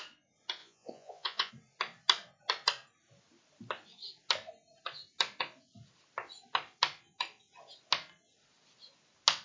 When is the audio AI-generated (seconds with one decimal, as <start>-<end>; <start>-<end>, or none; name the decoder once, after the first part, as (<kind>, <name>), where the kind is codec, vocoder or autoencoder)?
0.6-1.5 (vocoder, Vocos)